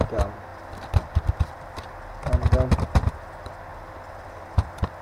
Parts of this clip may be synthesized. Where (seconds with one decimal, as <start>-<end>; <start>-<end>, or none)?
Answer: 3.7-4.4